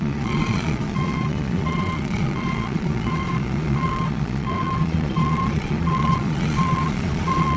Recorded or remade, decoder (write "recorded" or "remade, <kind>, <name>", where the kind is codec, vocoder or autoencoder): remade, vocoder, Vocos